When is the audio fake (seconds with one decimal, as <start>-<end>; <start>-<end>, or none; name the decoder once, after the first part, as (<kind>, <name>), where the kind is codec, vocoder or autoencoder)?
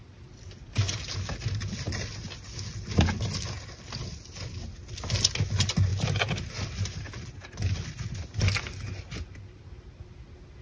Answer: none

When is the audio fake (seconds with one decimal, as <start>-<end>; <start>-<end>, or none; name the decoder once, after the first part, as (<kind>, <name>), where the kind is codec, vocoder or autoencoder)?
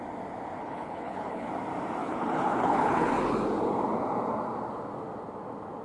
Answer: 0.6-1.5 (codec, HILCodec); 2.0-3.1